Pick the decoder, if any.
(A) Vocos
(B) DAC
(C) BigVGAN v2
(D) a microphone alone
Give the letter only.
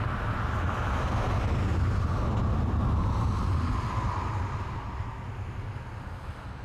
D